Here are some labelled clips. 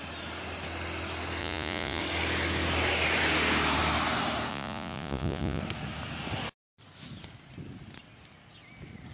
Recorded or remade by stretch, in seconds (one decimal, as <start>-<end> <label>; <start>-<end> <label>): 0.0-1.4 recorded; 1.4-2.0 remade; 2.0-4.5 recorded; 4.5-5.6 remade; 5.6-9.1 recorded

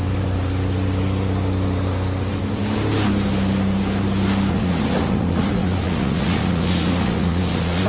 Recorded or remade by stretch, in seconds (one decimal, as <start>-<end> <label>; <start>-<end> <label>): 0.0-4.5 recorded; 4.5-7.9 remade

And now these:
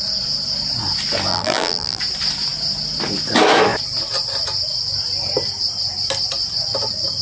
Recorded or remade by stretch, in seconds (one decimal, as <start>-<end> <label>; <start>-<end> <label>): 0.0-1.3 recorded; 1.3-2.0 remade; 2.0-7.2 recorded

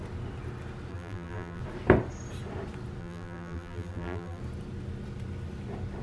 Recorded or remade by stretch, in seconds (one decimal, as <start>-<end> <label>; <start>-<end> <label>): 0.0-0.9 recorded; 0.9-1.6 remade; 1.6-3.0 recorded; 3.0-4.4 remade; 4.4-6.0 recorded